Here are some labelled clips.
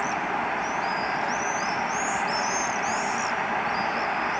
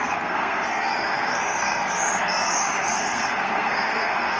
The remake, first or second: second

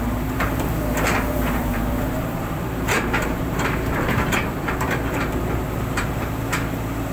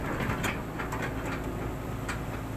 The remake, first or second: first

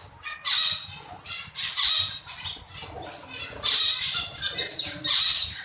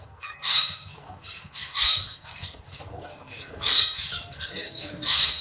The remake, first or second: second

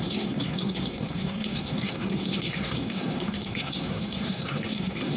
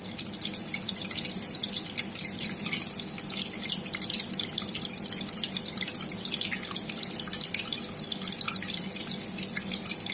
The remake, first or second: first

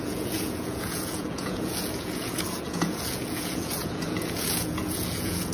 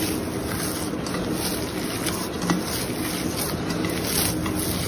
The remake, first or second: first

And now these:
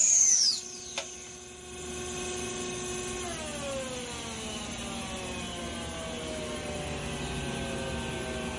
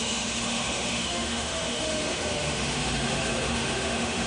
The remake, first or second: second